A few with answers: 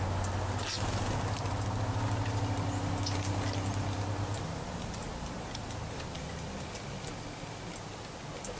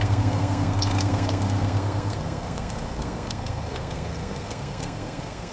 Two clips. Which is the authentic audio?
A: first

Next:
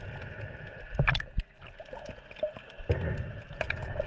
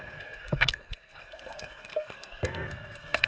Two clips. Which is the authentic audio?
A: first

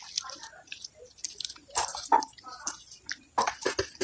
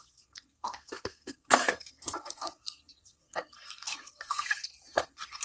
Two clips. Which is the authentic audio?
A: first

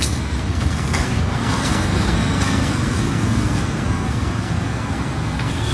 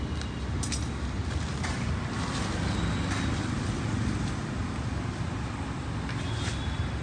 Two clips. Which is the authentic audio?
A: second